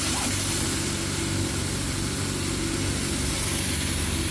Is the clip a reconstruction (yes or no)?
no